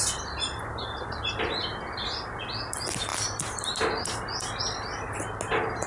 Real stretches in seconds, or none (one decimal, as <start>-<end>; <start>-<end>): 0.0-5.9